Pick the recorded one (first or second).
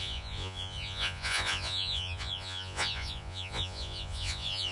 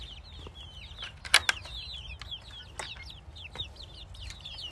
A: second